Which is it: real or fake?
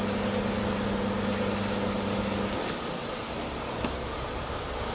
real